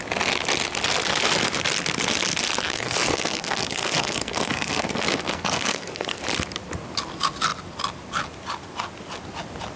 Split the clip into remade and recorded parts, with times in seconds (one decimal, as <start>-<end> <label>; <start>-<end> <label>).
0.0-2.7 recorded; 2.7-6.2 remade; 6.2-9.8 recorded